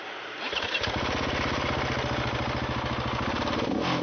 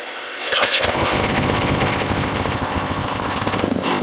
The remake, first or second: second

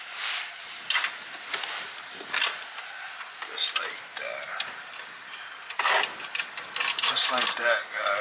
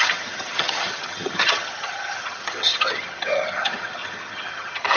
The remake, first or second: second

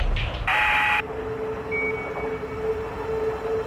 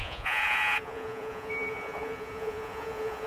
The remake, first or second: second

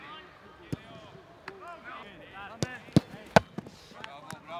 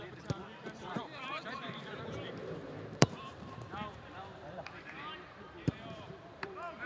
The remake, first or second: second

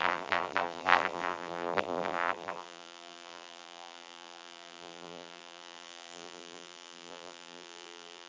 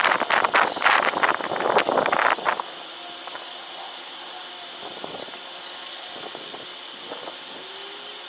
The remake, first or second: first